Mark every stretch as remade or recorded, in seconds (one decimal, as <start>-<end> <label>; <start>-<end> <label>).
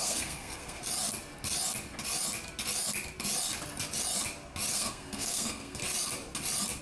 0.0-0.8 remade; 0.8-4.7 recorded; 4.7-5.8 remade; 5.8-6.8 recorded